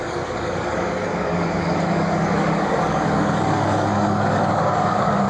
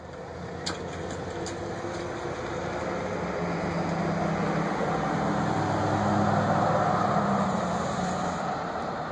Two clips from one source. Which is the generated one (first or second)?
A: first